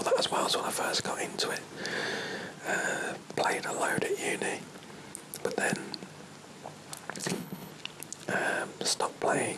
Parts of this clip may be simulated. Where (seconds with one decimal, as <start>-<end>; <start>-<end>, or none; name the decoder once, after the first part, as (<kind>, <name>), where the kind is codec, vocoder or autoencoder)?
7.2-7.7 (codec, HILCodec)